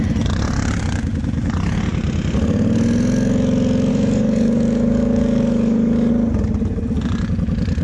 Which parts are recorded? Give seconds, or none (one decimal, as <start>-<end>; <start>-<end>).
0.0-3.9; 6.1-7.8